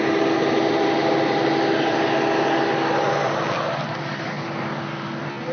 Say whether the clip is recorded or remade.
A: recorded